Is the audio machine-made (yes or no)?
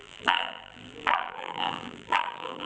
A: yes